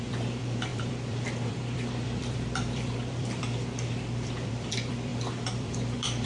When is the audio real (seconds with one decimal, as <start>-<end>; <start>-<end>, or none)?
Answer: none